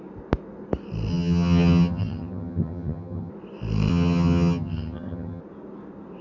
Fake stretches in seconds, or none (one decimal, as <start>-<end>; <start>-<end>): 1.1-3.3; 3.9-5.4

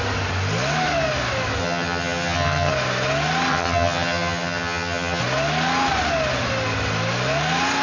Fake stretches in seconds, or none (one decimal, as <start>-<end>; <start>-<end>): 1.6-2.7; 3.5-5.2